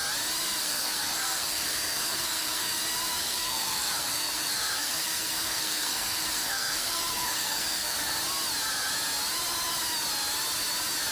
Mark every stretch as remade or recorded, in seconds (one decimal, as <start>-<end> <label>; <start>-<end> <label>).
0.0-0.6 recorded; 0.6-2.8 remade; 2.8-3.2 recorded; 3.2-8.0 remade; 8.0-11.1 recorded